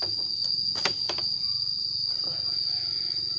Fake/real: real